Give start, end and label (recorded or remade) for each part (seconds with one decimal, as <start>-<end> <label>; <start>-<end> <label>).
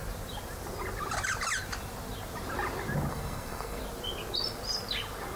0.0-3.1 recorded; 3.1-3.8 remade; 3.8-5.4 recorded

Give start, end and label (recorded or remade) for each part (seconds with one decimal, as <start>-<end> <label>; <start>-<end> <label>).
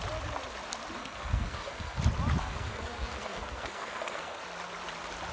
0.0-1.0 recorded; 1.0-2.0 remade; 2.0-2.4 recorded; 2.4-4.4 remade; 4.4-5.3 recorded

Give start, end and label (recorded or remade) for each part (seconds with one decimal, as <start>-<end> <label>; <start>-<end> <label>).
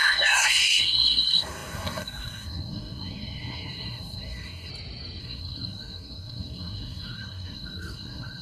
0.0-4.7 remade; 4.7-5.2 recorded; 5.2-8.4 remade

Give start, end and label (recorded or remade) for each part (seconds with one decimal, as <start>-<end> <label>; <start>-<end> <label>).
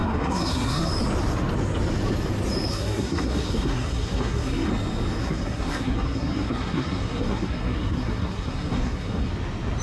0.0-0.9 remade; 0.9-2.7 recorded; 2.7-4.7 remade; 4.7-5.2 recorded; 5.2-9.3 remade; 9.3-9.8 recorded